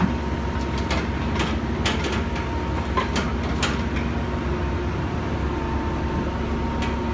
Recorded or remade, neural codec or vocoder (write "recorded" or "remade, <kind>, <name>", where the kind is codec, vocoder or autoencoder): recorded